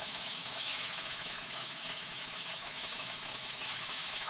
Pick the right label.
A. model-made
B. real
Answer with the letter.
A